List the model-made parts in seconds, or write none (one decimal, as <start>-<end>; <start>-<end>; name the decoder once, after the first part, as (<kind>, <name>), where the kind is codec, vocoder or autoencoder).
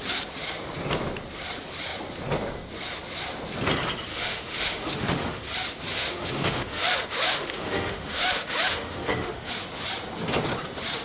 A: 4.1-5.4 (autoencoder, DAC-VAE); 5.9-9.5